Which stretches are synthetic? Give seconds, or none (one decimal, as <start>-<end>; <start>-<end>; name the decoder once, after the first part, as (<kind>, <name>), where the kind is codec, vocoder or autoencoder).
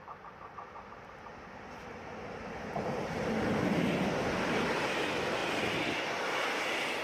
none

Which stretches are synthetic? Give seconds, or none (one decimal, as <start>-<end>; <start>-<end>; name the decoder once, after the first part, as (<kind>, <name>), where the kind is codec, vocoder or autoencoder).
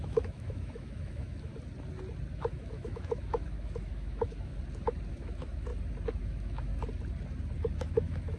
0.0-1.5 (autoencoder, DAC-VAE); 2.3-4.5; 5.1-5.7; 6.2-6.7; 7.7-8.4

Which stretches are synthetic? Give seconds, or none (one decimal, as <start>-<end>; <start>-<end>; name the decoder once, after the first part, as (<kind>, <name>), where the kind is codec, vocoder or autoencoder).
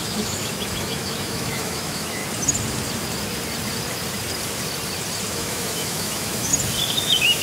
0.0-2.2 (autoencoder, DAC-VAE); 5.3-6.5; 7.0-7.4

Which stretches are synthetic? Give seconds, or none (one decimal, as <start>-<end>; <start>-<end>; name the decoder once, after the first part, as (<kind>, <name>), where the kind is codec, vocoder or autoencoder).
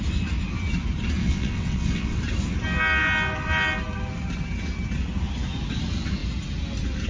1.2-2.2 (vocoder, WaveNeXt)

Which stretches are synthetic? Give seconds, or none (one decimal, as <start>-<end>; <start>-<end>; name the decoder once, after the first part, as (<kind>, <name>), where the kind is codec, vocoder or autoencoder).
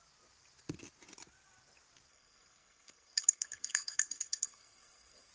2.1-5.3 (codec, SNAC)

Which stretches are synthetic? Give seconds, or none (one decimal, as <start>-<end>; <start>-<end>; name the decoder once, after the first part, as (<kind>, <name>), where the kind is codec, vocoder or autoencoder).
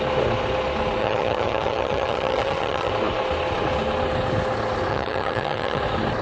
1.0-2.9 (vocoder, HiFi-GAN); 4.9-5.8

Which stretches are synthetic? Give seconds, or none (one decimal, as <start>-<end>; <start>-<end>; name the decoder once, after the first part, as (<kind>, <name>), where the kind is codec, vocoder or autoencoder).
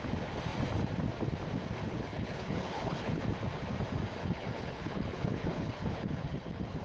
1.9-3.2 (codec, HILCodec); 4.2-6.8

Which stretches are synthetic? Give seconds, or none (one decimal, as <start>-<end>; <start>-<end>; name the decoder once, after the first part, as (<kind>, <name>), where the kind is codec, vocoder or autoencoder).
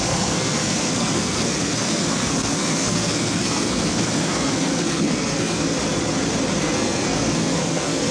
0.0-5.8 (codec, SNAC); 6.6-8.1